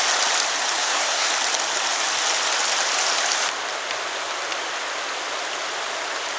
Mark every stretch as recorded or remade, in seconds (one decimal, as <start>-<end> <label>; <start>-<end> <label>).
0.0-0.8 recorded; 0.8-1.3 remade; 1.3-6.4 recorded